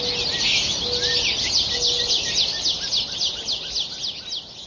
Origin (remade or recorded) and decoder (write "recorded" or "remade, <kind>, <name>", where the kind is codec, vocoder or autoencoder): recorded